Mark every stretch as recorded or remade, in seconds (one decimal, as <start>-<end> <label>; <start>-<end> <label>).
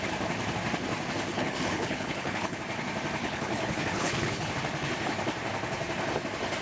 0.0-1.3 recorded; 1.3-2.6 remade; 2.6-3.2 recorded; 3.2-4.5 remade; 4.5-6.6 recorded